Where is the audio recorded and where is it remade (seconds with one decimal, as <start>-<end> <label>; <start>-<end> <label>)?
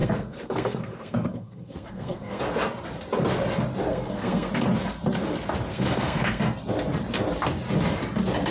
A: 0.0-2.4 remade; 2.4-3.9 recorded; 3.9-4.5 remade; 4.5-5.7 recorded; 5.7-6.4 remade; 6.4-8.5 recorded